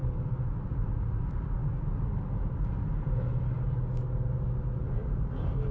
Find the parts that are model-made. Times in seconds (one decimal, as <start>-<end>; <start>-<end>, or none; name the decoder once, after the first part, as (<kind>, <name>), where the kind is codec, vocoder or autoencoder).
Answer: none